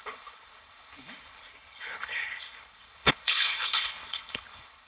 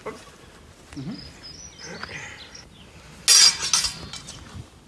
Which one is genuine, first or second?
second